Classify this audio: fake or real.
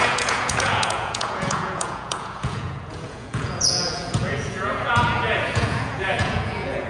fake